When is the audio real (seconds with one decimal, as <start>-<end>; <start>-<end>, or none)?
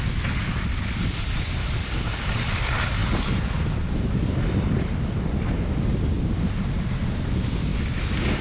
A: 0.0-8.4